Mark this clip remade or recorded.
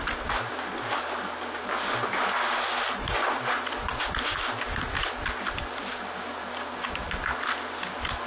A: recorded